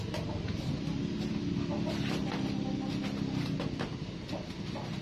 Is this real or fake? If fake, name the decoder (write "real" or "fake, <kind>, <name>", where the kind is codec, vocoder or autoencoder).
real